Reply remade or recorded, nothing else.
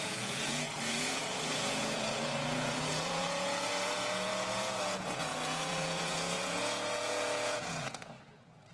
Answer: remade